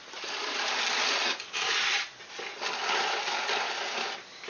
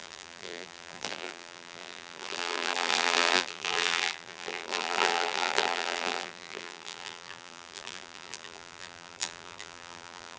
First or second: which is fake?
second